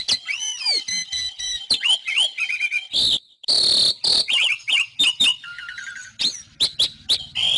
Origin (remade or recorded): recorded